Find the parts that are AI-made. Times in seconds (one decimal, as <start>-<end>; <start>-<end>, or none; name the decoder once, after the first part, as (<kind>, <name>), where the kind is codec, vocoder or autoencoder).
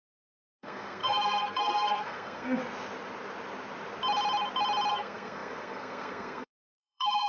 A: 0.0-2.6 (codec, SNAC); 4.9-7.3